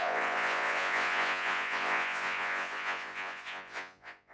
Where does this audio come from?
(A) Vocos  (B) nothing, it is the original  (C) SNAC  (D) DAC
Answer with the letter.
A